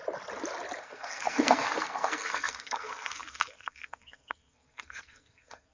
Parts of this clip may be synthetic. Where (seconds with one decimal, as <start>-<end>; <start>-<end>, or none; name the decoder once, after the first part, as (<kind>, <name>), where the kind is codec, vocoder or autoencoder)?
0.8-5.7 (codec, SNAC)